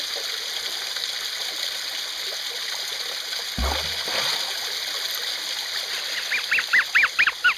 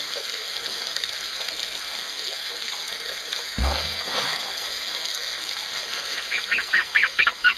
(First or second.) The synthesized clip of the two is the second